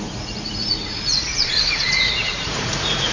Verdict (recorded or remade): remade